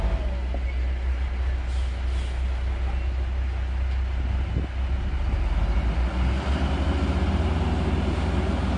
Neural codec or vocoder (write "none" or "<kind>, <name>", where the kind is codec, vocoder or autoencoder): none